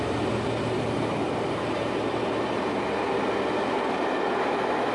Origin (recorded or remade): recorded